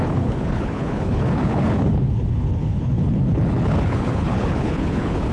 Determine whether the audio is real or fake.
fake